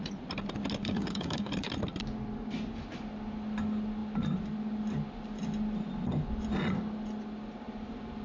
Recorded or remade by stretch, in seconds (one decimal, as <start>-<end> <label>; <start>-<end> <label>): 0.0-0.8 recorded; 0.8-1.5 remade; 1.5-8.2 recorded